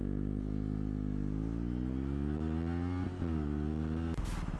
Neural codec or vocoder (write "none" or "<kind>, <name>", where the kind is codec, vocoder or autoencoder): none